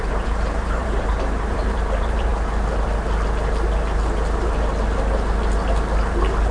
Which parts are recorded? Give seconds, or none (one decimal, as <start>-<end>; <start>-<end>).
2.3-6.5